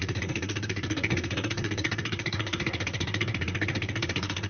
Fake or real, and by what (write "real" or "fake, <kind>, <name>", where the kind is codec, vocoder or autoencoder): fake, codec, SNAC